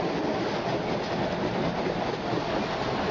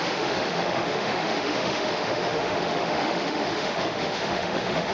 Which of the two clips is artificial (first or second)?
second